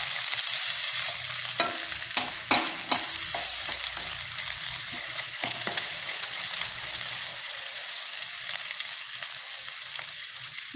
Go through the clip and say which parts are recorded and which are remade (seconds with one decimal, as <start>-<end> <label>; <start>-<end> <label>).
0.0-4.8 recorded; 4.8-6.5 remade; 6.5-7.3 recorded; 7.3-7.9 remade; 7.9-10.2 recorded; 10.2-10.8 remade